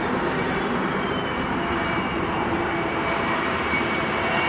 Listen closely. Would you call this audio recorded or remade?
remade